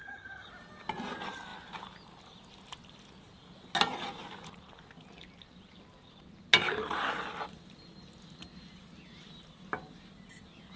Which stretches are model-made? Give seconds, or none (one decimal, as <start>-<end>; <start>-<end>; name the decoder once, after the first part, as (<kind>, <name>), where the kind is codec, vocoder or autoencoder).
0.0-0.5 (vocoder, HiFi-GAN)

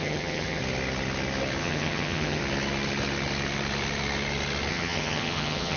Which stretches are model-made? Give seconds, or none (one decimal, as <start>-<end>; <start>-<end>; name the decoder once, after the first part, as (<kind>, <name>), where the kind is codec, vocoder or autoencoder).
0.0-0.6 (vocoder, HiFi-GAN); 1.6-2.4; 4.7-5.8

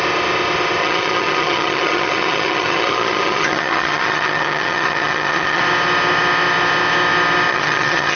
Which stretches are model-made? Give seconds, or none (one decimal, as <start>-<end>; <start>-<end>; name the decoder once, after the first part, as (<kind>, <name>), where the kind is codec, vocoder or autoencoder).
0.8-5.6 (vocoder, HiFi-GAN); 7.5-8.2

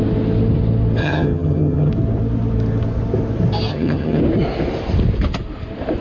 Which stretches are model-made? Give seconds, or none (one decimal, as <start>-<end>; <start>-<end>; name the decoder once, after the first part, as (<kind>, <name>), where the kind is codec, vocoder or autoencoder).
1.0-1.9 (vocoder, HiFi-GAN); 3.7-4.2

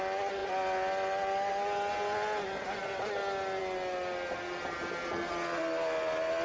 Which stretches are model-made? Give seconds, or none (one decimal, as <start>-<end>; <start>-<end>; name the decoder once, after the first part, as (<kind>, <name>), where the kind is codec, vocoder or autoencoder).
none

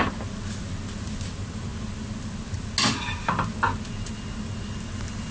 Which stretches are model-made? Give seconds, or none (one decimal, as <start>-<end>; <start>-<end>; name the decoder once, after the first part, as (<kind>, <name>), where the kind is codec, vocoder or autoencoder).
none